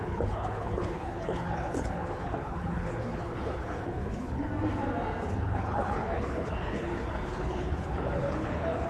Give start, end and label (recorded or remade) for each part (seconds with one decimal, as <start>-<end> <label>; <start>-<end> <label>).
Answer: 0.0-4.5 remade; 4.5-5.3 recorded; 5.3-8.9 remade